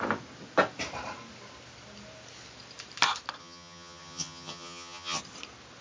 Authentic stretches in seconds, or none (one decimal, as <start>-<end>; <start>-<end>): 0.0-3.4; 5.2-5.8